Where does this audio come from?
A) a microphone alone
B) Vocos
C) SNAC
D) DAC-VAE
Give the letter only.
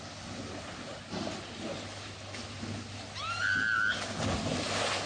A